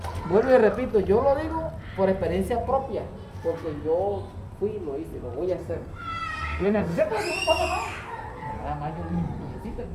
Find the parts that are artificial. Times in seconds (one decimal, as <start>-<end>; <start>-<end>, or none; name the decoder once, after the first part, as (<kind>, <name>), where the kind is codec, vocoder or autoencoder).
5.6-7.0 (codec, SNAC)